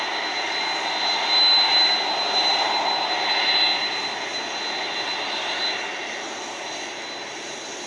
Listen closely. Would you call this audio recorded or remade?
recorded